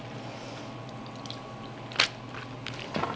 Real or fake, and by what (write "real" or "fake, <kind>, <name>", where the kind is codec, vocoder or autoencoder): real